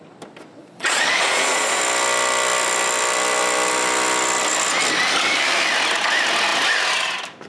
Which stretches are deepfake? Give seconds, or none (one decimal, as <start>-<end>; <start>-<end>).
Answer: 0.6-1.8

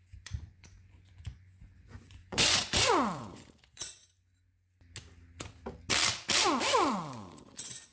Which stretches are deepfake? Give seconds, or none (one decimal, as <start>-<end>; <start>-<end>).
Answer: 0.0-4.0; 6.9-7.9

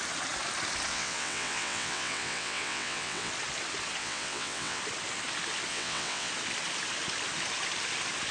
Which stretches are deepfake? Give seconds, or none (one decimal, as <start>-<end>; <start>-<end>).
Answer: 0.9-3.3; 4.0-4.8; 5.7-6.3

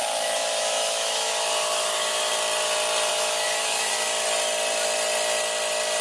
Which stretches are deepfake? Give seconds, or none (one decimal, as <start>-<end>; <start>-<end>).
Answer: 0.0-2.3; 3.1-3.9

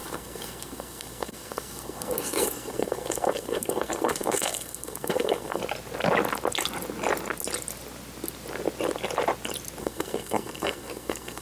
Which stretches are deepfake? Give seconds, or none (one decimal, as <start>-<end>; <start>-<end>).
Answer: 0.0-5.6; 9.8-11.4

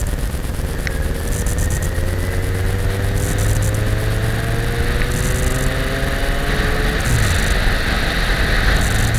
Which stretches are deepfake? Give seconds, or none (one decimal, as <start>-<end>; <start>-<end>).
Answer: none